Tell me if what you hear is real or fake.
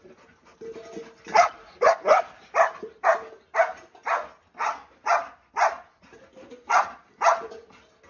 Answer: real